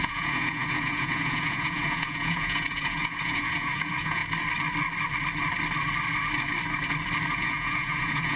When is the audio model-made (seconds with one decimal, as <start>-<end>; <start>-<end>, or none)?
0.0-4.2; 7.3-8.4